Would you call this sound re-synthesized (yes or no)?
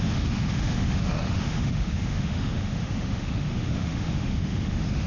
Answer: yes